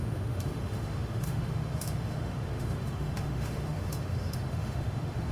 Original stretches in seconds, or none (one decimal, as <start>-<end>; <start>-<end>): none